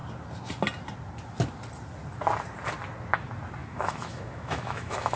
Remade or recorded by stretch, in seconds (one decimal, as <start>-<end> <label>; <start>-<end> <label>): 0.0-3.6 recorded; 3.6-5.2 remade